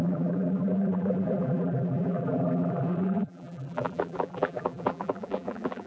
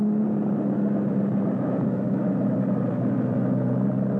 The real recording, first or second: second